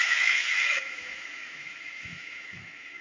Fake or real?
fake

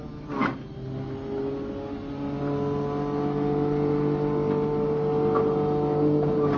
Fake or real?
real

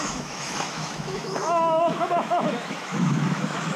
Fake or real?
fake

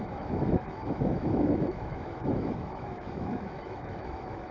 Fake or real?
fake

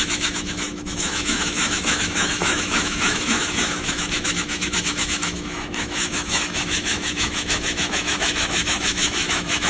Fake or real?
fake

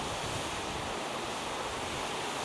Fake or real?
real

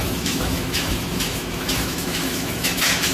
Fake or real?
fake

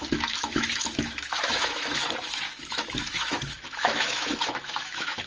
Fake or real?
fake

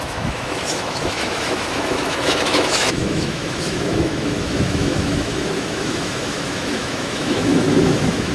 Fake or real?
fake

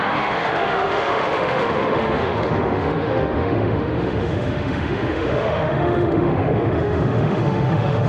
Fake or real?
fake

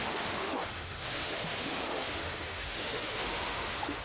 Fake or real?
fake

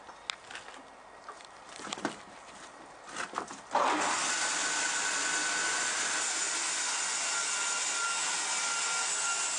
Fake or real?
real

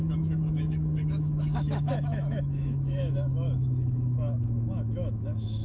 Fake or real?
fake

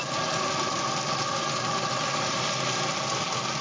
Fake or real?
real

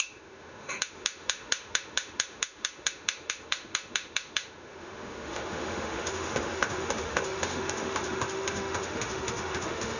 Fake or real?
fake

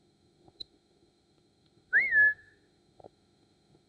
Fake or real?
fake